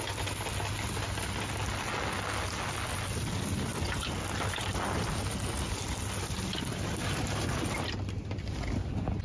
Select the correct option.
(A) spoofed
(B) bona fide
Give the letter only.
B